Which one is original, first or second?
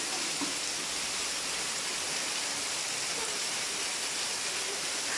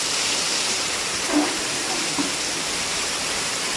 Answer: first